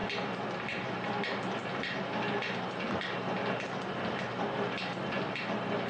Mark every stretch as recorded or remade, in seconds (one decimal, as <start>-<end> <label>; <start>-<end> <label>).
0.0-5.9 recorded